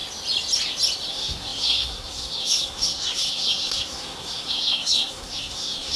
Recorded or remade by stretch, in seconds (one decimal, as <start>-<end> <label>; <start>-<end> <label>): 0.0-1.1 recorded; 1.1-6.0 remade